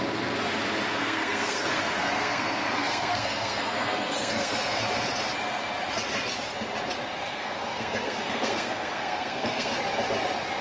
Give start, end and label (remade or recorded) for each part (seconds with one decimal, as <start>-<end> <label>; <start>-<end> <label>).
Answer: 0.0-1.0 recorded; 1.0-4.8 remade; 4.8-7.3 recorded; 7.3-9.7 remade; 9.7-10.6 recorded

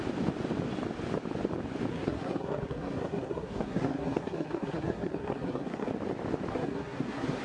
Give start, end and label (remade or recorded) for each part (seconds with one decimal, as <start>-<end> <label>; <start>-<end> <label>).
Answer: 0.0-1.9 recorded; 1.9-5.9 remade; 5.9-6.5 recorded; 6.5-7.4 remade

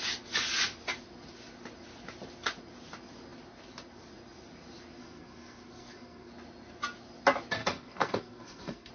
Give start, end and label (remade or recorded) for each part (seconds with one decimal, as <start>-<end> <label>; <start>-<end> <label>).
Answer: 0.0-5.0 recorded; 5.0-6.3 remade; 6.3-7.6 recorded; 7.6-8.9 remade

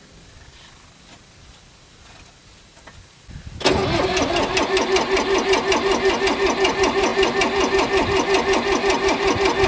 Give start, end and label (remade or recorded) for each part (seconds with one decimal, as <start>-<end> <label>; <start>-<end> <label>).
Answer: 0.0-9.7 recorded

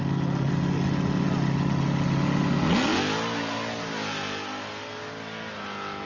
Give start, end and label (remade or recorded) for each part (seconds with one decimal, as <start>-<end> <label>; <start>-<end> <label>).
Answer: 0.0-6.1 recorded

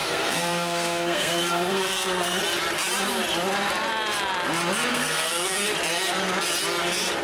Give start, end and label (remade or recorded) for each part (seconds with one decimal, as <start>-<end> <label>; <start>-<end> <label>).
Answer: 0.0-2.4 remade; 2.4-4.9 recorded; 4.9-5.7 remade; 5.7-7.2 recorded